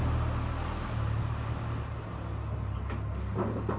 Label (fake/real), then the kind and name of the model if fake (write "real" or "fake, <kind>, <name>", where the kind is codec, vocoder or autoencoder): real